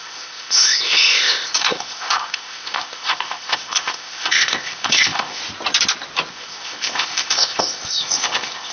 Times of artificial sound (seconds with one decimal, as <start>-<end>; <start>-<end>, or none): 0.0-5.4; 6.3-8.7

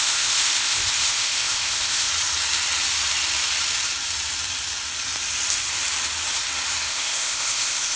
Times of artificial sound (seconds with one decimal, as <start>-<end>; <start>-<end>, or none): 0.0-2.1; 6.9-8.0

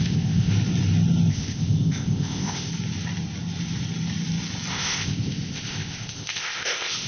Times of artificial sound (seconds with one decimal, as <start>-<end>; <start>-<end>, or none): 0.0-0.5; 1.3-2.7; 4.7-7.1

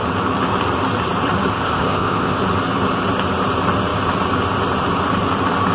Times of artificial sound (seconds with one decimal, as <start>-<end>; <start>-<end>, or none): 1.5-2.4

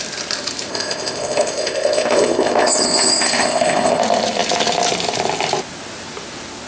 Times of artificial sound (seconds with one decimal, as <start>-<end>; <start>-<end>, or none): 0.7-4.0

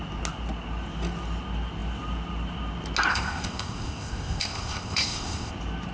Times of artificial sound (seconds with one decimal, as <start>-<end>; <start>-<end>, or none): 3.1-5.5

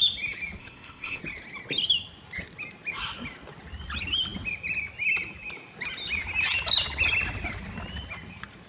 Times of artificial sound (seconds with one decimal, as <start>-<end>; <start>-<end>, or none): 0.6-1.2

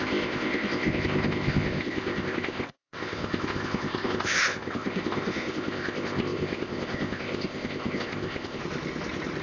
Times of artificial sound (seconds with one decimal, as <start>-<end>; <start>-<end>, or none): 0.0-8.6